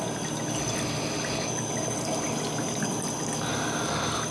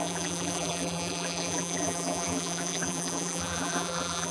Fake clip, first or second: second